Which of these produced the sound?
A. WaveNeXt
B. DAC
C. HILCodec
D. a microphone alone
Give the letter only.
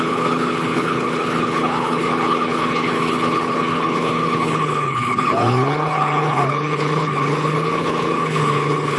C